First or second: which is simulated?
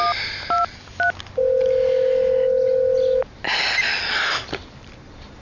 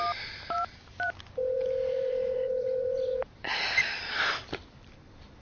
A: second